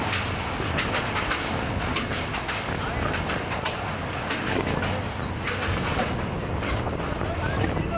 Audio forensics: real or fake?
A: real